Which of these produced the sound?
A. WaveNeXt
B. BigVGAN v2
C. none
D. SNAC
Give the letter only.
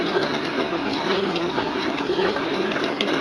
D